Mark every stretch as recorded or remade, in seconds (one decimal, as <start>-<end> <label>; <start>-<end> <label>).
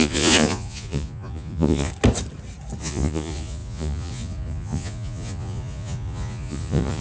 0.0-1.9 remade; 1.9-2.8 recorded; 2.8-7.0 remade